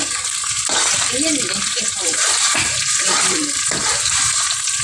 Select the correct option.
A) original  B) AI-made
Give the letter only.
B